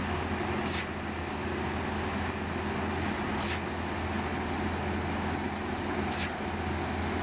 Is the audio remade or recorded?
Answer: recorded